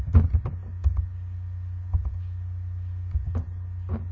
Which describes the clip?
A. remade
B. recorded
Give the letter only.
B